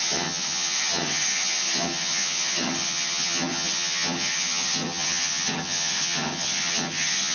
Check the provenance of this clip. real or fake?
fake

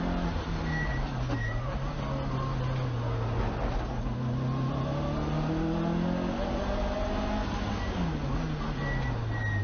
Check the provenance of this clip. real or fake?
real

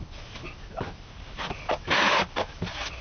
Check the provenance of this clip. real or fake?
real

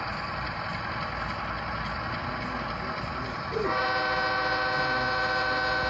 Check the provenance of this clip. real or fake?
real